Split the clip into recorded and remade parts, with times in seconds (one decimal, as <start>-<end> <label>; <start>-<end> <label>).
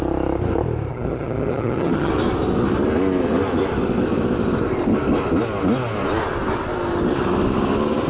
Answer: 0.0-0.9 recorded; 0.9-2.1 remade; 2.1-8.1 recorded